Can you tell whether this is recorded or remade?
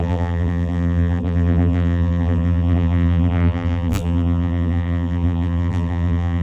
remade